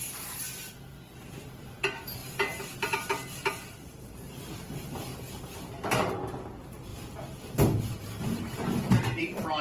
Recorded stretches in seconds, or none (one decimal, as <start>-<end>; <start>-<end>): 6.9-7.5